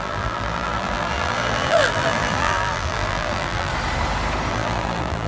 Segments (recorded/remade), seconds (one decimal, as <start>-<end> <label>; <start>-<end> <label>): 0.0-3.7 remade; 3.7-4.5 recorded; 4.5-5.3 remade